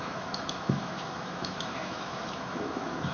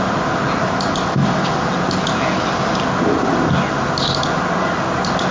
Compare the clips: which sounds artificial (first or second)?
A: first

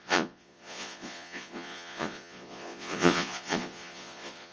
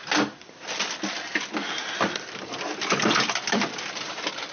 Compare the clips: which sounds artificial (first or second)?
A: first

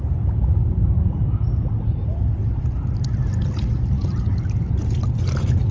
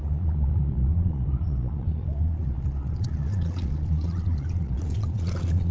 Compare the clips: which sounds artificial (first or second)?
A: second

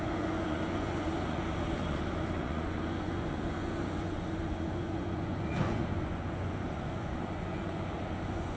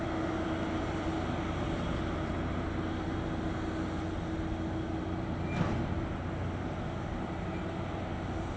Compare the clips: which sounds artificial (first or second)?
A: first